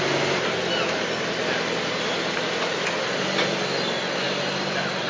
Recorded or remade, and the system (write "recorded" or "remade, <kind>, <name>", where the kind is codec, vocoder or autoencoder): recorded